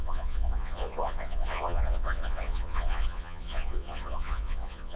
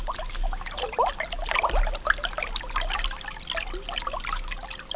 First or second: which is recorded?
second